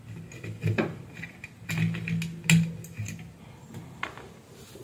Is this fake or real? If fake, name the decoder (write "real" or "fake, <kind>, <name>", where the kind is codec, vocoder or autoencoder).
real